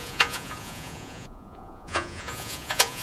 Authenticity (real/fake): fake